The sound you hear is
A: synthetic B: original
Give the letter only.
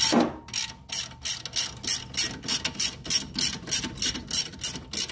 B